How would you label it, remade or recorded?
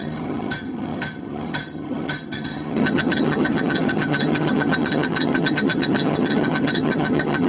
remade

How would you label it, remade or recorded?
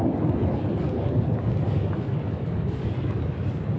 remade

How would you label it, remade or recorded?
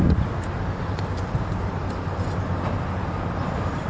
recorded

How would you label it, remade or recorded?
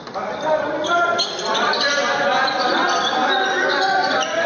recorded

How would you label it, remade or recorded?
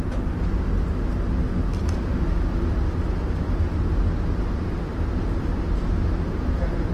recorded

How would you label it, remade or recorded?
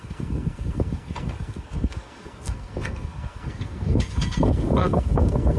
remade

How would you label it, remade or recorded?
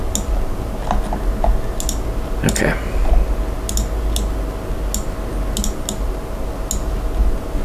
recorded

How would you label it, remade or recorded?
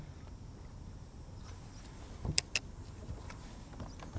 recorded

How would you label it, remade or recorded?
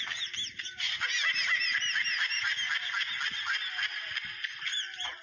recorded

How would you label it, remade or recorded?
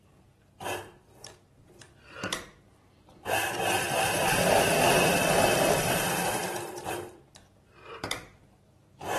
remade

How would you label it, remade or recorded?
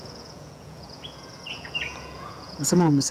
remade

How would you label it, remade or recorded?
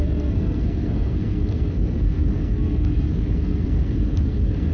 remade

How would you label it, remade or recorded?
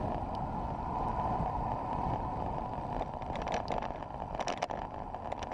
recorded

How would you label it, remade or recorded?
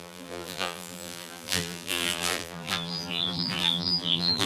remade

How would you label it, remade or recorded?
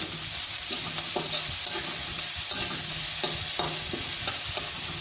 recorded